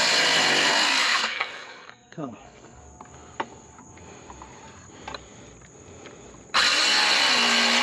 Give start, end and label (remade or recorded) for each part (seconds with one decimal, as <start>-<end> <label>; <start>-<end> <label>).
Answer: 0.0-1.0 recorded; 1.0-2.8 remade; 2.8-7.8 recorded